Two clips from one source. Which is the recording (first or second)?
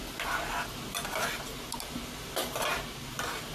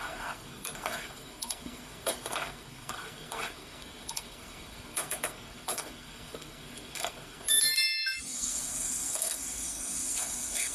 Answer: first